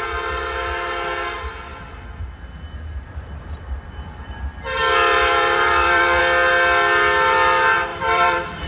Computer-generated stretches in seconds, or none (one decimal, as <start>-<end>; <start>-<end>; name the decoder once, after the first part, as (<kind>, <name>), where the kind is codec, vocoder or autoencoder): 1.7-4.3 (vocoder, BigVGAN v2); 5.1-6.2; 7.9-8.7